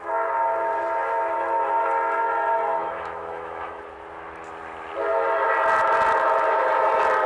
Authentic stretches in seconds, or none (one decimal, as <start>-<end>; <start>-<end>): 0.0-2.8; 3.8-7.3